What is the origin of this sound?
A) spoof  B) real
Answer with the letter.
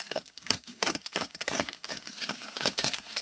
A